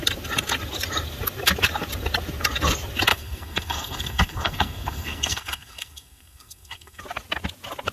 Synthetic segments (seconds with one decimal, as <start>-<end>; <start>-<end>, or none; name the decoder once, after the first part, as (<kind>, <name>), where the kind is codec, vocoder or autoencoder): 3.1-7.0 (codec, SNAC)